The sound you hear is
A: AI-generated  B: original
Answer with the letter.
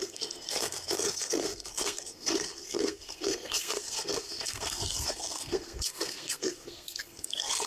A